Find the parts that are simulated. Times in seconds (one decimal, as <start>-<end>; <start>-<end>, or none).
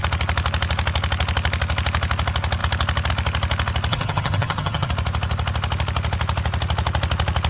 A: 3.9-4.9